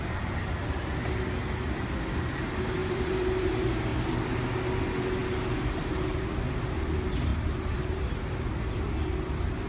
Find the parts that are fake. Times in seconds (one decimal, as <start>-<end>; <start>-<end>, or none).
2.8-3.5; 7.3-8.1

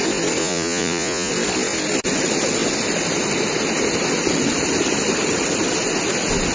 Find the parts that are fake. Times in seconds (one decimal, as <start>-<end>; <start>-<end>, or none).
0.4-1.3

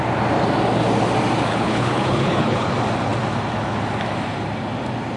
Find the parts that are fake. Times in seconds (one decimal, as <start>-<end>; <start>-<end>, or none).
1.5-2.7

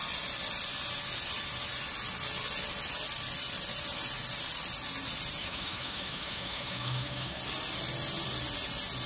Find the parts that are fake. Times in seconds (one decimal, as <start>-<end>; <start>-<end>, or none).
5.4-7.4

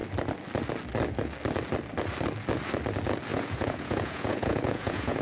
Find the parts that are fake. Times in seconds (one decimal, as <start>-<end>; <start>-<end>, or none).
3.3-5.2

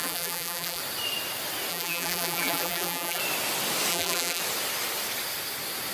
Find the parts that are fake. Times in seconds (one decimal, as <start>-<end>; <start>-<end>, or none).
0.0-0.8; 1.7-3.2; 3.9-4.4

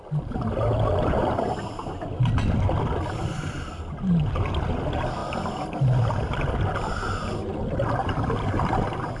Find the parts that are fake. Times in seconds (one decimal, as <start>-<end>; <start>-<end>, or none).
none